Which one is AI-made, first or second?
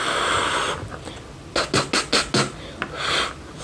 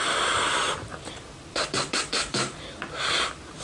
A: second